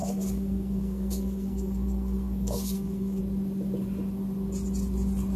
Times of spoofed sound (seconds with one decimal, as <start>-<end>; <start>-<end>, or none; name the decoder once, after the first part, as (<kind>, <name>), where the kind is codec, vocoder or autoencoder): 0.0-3.2 (codec, SNAC)